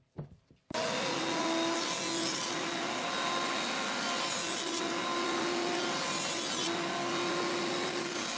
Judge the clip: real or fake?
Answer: real